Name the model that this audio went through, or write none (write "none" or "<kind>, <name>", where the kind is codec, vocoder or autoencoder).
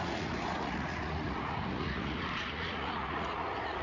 vocoder, Vocos